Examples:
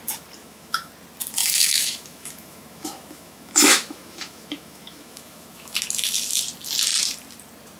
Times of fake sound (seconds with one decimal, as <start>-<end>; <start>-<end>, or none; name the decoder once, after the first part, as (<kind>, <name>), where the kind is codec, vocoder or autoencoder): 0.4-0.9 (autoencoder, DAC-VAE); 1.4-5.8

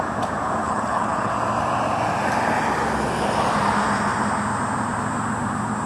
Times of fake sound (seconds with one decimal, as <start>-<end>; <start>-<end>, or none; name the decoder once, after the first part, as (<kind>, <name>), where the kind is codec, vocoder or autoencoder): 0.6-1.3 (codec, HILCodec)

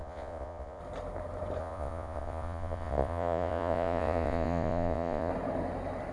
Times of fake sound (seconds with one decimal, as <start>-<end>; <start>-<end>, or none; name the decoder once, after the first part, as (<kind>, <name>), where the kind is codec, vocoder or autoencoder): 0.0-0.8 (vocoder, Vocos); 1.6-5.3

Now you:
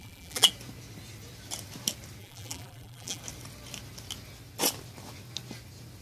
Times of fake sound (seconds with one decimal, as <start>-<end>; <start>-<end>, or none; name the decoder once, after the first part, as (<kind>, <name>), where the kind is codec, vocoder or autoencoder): 0.0-0.5 (vocoder, BigVGAN v2); 2.2-3.2

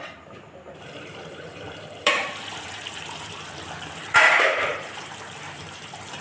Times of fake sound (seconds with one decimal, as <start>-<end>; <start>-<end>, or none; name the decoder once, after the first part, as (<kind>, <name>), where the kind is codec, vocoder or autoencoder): 0.0-6.2 (vocoder, BigVGAN v2)